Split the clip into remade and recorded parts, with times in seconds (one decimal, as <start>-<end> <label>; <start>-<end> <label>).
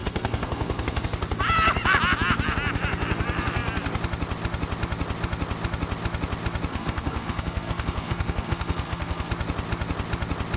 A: 0.0-1.0 remade; 1.0-6.7 recorded; 6.7-9.3 remade; 9.3-10.6 recorded